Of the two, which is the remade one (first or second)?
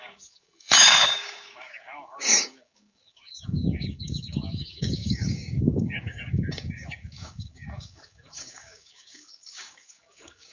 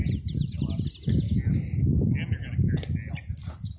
first